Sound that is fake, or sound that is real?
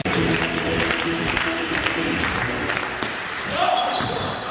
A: fake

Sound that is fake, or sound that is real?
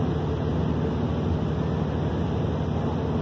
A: real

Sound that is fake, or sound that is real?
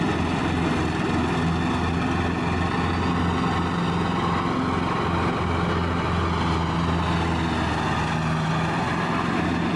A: real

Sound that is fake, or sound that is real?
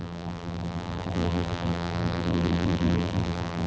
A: fake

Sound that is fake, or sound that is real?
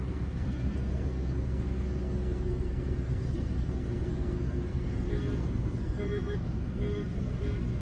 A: fake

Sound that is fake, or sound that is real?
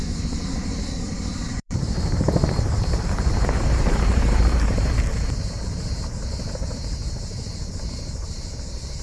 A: fake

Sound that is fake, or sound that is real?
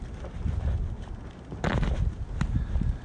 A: real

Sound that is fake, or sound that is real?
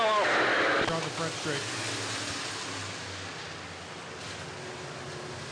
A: real